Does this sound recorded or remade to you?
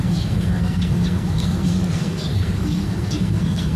remade